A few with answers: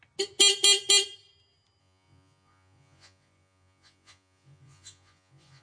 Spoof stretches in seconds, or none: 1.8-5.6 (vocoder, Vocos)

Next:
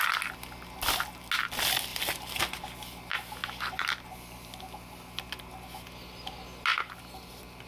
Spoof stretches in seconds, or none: 1.9-2.4 (vocoder, BigVGAN v2); 3.4-4.6

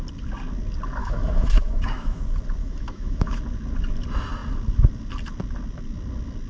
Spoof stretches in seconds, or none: 1.0-2.2 (autoencoder, DAC-VAE); 2.6-3.4

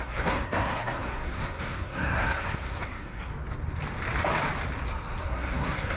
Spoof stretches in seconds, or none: 0.0-3.3 (codec, SNAC); 5.2-6.0

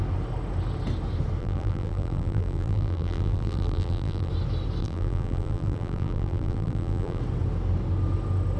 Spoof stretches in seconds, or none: 1.4-4.3 (vocoder, BigVGAN v2); 4.8-7.2

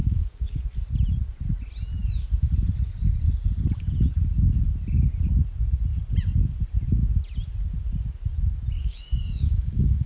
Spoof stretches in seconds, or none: 0.0-0.6 (codec, DAC); 8.8-10.1